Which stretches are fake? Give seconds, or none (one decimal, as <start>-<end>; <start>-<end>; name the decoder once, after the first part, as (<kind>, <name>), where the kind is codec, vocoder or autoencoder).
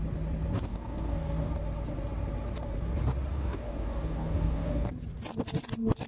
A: 0.7-1.5 (codec, DAC); 3.3-4.9